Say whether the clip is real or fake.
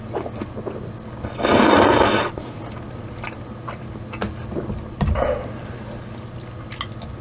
real